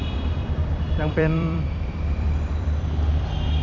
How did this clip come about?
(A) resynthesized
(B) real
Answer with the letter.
A